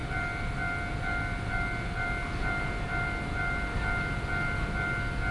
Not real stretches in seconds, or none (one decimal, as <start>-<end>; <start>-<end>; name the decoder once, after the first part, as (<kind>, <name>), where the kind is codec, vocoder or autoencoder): none